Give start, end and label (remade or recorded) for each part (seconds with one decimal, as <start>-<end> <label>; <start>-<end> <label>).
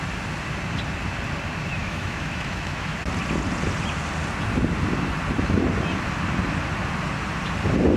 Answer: 0.0-1.8 recorded; 1.8-3.0 remade; 3.0-8.0 recorded